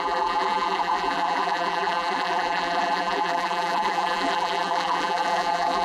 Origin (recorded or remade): remade